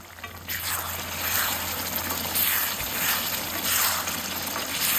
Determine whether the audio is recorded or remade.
recorded